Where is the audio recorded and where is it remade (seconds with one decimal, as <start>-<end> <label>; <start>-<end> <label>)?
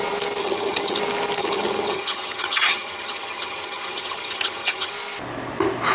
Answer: 0.0-0.4 recorded; 0.4-1.0 remade; 1.0-1.4 recorded; 1.4-4.9 remade; 4.9-5.9 recorded